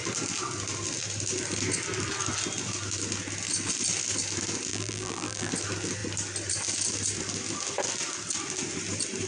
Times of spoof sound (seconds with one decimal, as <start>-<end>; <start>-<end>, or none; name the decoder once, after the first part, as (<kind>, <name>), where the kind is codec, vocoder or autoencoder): 4.7-5.5 (vocoder, BigVGAN v2)